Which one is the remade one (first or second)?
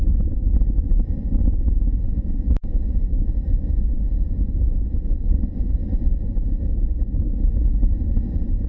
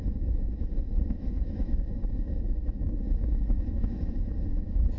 second